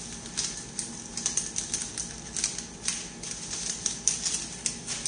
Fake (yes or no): no